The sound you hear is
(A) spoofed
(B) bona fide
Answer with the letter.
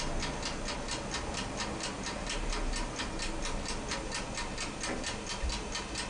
B